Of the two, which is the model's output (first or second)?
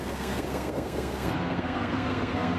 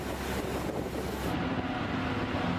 first